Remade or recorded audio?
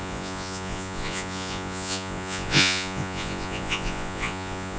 remade